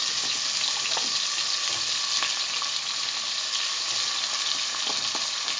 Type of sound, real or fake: real